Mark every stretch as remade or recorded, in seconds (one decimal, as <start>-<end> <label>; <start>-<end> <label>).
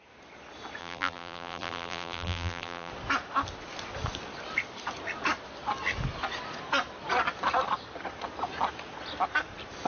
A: 0.0-0.8 recorded; 0.8-2.9 remade; 2.9-9.9 recorded